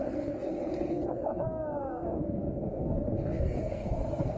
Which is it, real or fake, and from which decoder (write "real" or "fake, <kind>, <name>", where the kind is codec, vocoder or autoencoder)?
fake, codec, SNAC